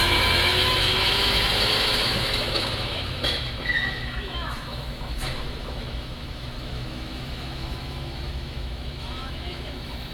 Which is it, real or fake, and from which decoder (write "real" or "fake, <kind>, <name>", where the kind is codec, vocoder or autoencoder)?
fake, autoencoder, DAC-VAE